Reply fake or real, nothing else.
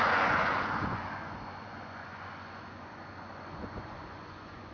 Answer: fake